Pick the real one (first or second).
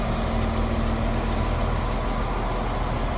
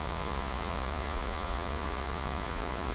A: first